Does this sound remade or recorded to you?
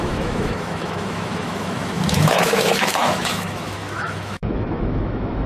remade